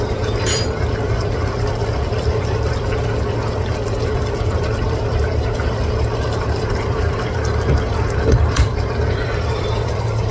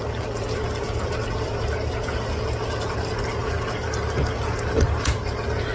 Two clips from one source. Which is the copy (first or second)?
first